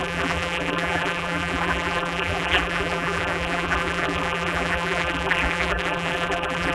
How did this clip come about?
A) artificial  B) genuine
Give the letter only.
A